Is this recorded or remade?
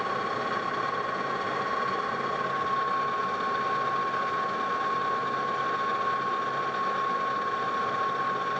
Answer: recorded